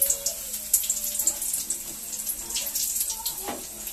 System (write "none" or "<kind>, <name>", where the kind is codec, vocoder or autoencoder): none